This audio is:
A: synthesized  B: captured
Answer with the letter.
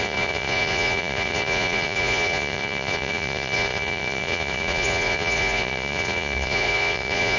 A